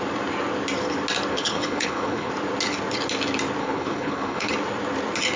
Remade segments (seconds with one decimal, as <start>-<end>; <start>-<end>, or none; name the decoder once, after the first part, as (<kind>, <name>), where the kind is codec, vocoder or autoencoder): 1.3-2.3 (codec, HILCodec); 3.6-4.5